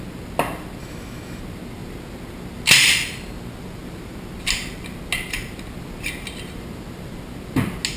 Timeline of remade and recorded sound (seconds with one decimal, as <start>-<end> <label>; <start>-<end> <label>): 0.0-0.8 recorded; 0.8-1.4 remade; 1.4-8.0 recorded